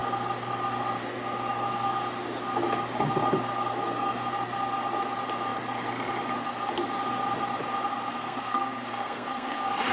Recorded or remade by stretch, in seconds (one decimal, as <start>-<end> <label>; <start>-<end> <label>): 0.0-8.1 recorded; 8.1-9.9 remade